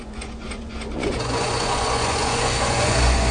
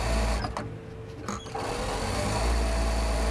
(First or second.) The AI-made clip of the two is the first